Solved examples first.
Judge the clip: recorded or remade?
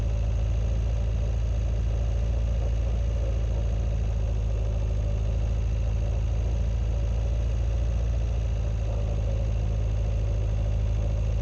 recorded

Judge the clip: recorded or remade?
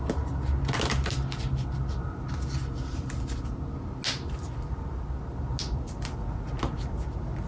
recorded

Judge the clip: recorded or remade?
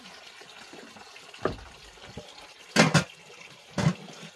recorded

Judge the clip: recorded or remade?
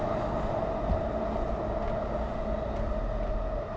recorded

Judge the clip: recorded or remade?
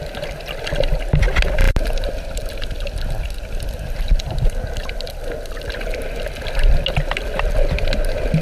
recorded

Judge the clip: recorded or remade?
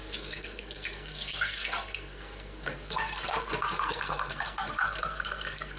remade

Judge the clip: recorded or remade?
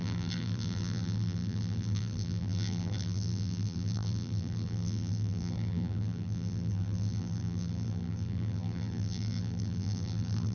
remade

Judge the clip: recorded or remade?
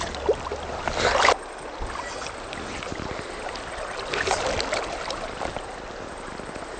recorded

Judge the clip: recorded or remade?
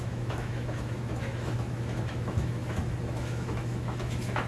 remade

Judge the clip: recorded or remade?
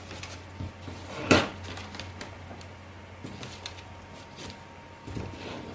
recorded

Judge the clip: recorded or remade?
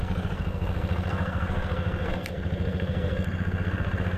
remade